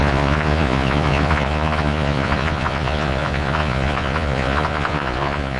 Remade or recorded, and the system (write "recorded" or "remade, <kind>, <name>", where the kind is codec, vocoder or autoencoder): remade, vocoder, Vocos